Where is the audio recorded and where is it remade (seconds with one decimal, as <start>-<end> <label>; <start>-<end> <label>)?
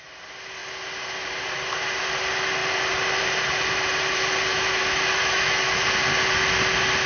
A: 0.0-4.5 recorded; 4.5-5.8 remade; 5.8-7.1 recorded